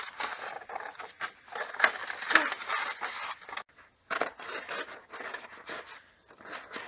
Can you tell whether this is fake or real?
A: real